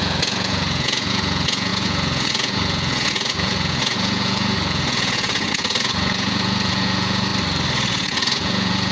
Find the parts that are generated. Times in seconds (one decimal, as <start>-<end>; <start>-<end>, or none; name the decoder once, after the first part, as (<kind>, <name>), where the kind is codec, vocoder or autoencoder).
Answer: 0.0-7.3 (vocoder, Vocos); 7.9-8.9